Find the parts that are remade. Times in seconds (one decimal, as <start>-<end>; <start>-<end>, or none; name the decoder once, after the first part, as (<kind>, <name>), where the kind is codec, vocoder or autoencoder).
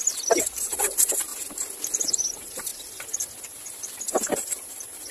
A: 0.0-1.3 (vocoder, BigVGAN v2); 2.0-2.7; 3.6-5.1